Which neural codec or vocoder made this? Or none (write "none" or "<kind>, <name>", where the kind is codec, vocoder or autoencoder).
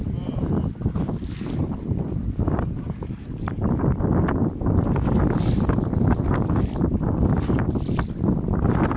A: none